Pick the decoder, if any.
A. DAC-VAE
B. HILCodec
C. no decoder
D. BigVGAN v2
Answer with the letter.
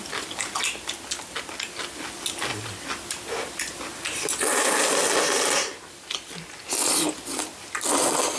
C